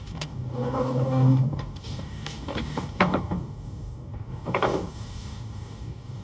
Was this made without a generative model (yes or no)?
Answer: no